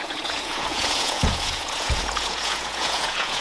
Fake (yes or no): yes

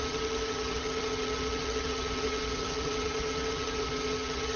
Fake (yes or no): yes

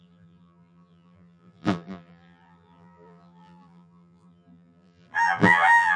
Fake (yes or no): yes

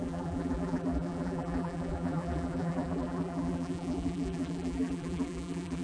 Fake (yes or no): yes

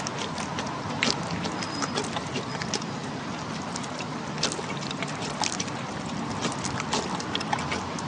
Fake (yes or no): no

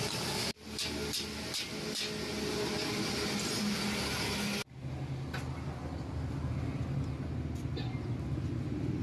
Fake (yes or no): no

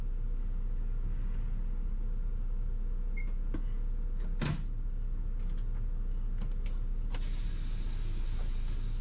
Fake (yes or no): no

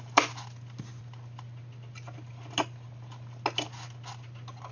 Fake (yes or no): no